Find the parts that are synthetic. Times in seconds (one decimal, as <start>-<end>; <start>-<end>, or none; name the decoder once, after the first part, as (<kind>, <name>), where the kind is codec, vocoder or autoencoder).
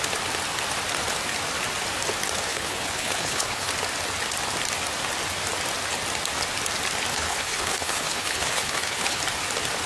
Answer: 2.5-3.7 (codec, HILCodec); 7.1-9.2